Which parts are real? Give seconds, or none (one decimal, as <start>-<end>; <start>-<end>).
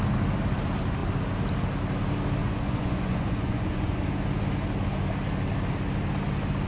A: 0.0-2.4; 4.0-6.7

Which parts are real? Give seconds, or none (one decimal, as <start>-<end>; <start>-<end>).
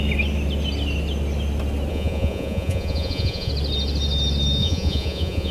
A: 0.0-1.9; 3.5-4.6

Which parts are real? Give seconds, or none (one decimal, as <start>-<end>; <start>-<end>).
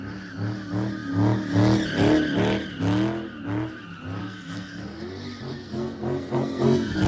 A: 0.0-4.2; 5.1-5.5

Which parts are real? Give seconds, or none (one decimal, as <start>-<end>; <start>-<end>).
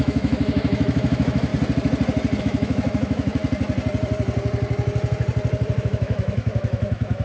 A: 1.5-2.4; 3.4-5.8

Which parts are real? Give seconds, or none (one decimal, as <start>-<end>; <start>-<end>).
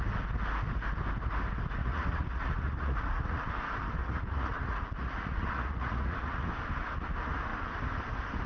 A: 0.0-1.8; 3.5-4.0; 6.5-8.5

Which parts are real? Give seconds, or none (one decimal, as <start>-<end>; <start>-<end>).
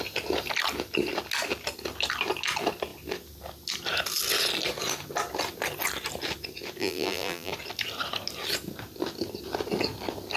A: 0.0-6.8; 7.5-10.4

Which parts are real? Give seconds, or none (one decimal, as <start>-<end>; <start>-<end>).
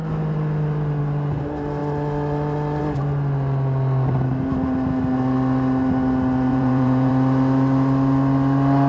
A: 0.0-6.5; 7.1-8.9